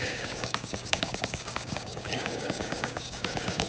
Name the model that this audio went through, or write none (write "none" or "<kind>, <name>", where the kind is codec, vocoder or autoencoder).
codec, DAC